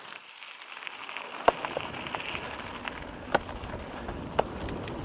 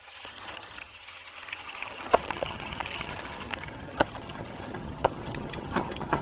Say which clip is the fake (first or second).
second